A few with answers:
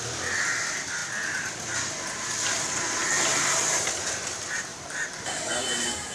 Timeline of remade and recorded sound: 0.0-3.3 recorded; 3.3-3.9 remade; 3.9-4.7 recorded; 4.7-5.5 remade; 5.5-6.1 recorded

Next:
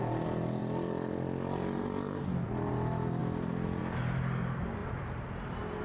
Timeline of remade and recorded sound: 0.0-4.8 recorded; 4.8-5.8 remade

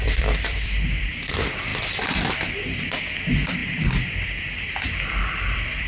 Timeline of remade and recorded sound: 0.0-1.7 remade; 1.7-2.3 recorded; 2.3-3.6 remade; 3.6-4.4 recorded; 4.4-5.9 remade

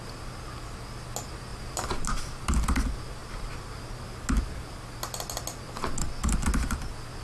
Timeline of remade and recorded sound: 0.0-1.5 recorded; 1.5-2.6 remade; 2.6-7.2 recorded

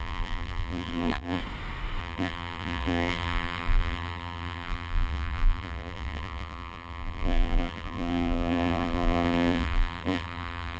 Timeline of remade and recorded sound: 0.0-1.4 remade; 1.4-2.0 recorded; 2.0-10.8 remade

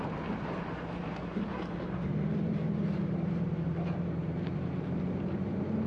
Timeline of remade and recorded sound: 0.0-5.9 remade

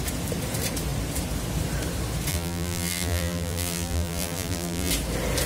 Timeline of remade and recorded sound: 0.0-2.3 recorded; 2.3-4.9 remade; 4.9-5.5 recorded

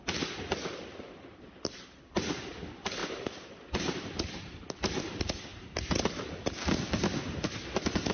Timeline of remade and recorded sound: 0.0-1.3 recorded; 1.3-2.0 remade; 2.0-3.0 recorded; 3.0-4.6 remade; 4.6-5.5 recorded; 5.5-6.7 remade; 6.7-8.1 recorded